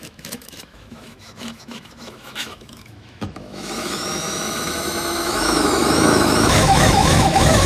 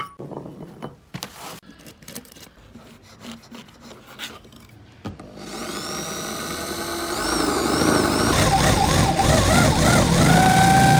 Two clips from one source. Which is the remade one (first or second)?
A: first